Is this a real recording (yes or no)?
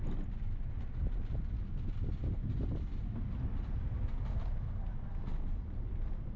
yes